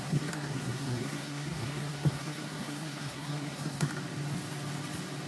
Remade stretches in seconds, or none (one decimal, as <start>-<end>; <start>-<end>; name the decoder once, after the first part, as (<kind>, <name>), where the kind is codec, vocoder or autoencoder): 0.0-3.9 (codec, SNAC)